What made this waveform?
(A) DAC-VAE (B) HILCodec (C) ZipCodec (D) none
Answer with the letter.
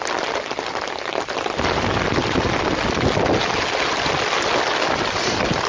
D